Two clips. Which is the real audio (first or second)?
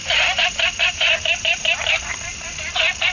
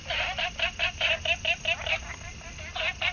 second